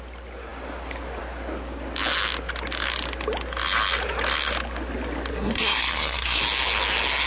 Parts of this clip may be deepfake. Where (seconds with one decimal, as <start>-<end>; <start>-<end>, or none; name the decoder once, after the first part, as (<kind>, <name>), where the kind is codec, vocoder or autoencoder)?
5.3-6.4 (codec, SNAC)